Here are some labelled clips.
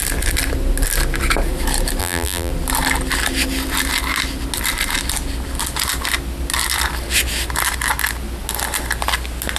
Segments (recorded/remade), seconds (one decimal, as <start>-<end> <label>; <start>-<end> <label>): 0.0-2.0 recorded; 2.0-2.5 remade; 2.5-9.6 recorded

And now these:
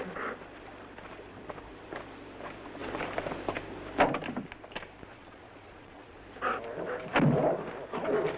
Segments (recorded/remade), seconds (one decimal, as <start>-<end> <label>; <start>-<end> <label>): 0.0-5.1 recorded; 5.1-6.2 remade; 6.2-8.4 recorded

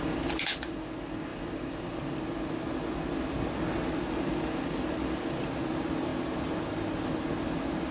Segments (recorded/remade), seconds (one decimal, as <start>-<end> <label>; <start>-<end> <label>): 0.0-7.9 recorded